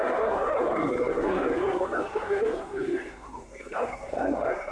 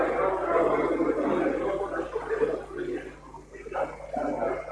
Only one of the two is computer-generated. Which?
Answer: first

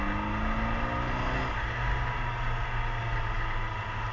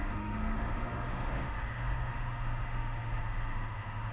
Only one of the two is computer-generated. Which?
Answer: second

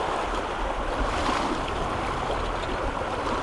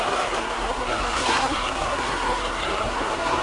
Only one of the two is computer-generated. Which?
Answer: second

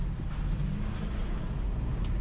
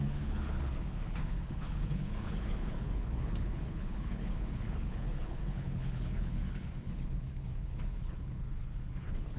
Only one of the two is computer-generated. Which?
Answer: second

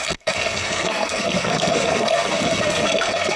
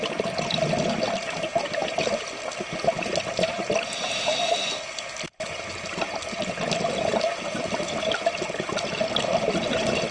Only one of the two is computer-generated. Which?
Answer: first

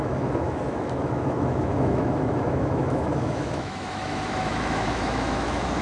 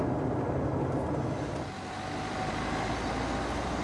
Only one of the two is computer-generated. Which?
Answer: first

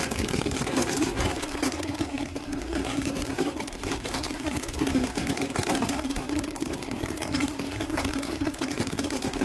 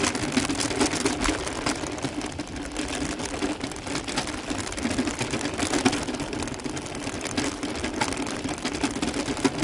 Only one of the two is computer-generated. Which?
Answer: first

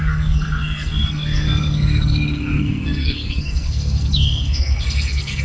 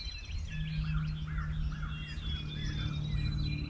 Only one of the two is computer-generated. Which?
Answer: first